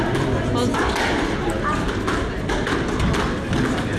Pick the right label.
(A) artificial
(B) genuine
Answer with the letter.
B